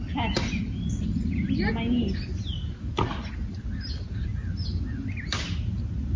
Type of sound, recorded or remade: recorded